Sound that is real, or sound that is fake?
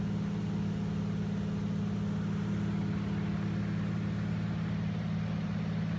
real